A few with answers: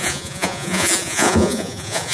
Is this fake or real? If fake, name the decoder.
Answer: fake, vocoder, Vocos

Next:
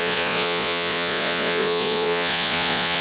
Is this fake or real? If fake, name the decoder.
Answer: fake, vocoder, Vocos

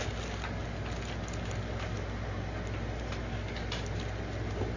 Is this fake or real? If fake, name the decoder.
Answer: real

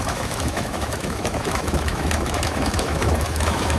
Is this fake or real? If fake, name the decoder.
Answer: fake, autoencoder, DAC-VAE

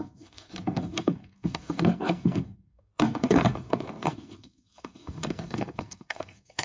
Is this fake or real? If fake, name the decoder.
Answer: fake, codec, SNAC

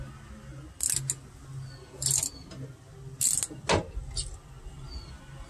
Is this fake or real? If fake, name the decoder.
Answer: real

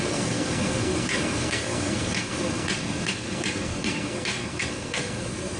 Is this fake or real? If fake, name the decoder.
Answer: fake, codec, SNAC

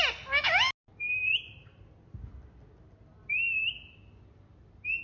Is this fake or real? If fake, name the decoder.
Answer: real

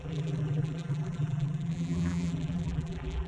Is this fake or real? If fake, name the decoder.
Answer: fake, vocoder, BigVGAN v2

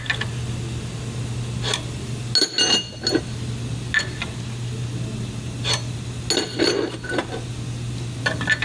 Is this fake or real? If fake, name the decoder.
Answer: real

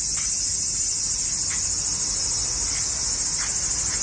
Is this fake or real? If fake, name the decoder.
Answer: real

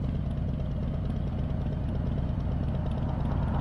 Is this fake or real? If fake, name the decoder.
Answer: real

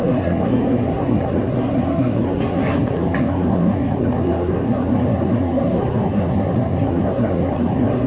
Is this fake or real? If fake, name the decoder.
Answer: fake, codec, SNAC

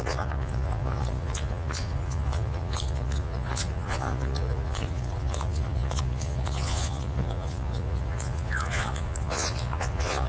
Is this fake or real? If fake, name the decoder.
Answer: fake, vocoder, Vocos